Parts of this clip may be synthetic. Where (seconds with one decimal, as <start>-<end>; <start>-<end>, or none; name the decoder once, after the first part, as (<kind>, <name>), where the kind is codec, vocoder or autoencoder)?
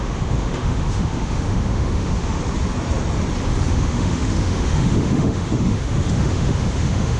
0.0-2.4 (autoencoder, DAC-VAE); 3.7-7.2